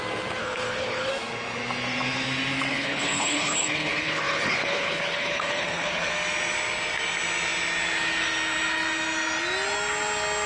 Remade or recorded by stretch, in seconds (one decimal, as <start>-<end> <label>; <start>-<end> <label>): 0.0-0.4 recorded; 0.4-1.1 remade; 1.1-2.7 recorded; 2.7-6.1 remade; 6.1-10.5 recorded